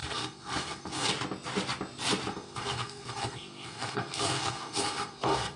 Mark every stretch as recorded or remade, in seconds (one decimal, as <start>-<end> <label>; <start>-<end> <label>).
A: 0.0-1.1 remade; 1.1-2.3 recorded; 2.3-5.6 remade